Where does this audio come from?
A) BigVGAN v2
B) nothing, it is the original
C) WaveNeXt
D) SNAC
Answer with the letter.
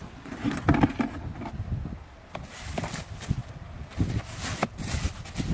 B